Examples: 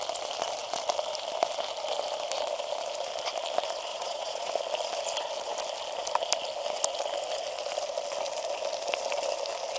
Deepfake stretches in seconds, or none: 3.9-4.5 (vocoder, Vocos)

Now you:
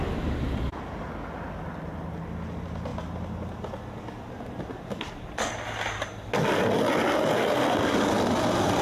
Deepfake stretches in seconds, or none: none

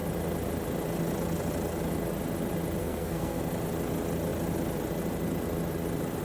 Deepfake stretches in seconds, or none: 2.8-3.4 (codec, SNAC)

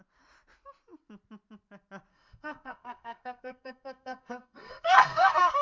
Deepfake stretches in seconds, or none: 2.1-5.6 (codec, SNAC)